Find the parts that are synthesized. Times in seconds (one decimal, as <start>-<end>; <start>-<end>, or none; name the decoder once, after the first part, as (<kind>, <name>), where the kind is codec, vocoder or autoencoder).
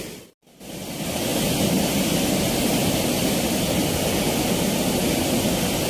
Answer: none